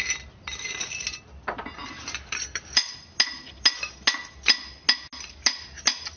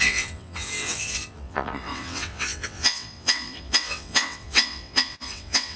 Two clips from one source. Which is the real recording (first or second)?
first